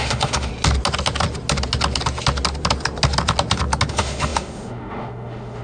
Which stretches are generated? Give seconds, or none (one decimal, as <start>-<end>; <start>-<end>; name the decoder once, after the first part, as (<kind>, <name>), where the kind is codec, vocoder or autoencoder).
0.0-0.5 (autoencoder, DAC-VAE); 3.9-5.6